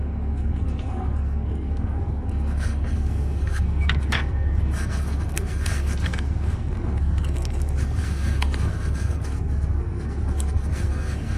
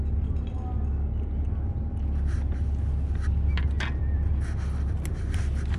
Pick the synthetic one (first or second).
first